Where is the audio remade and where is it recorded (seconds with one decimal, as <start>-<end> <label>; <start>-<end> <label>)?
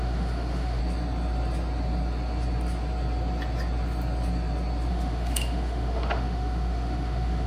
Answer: 0.0-0.8 remade; 0.8-4.9 recorded; 4.9-7.5 remade